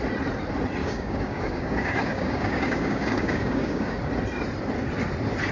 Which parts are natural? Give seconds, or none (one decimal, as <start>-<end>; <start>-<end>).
0.0-0.8; 4.1-5.5